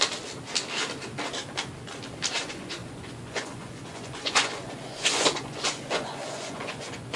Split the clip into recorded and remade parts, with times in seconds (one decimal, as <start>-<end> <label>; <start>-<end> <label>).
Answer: 0.0-2.3 recorded; 2.3-7.2 remade